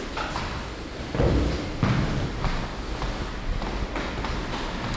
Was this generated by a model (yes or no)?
no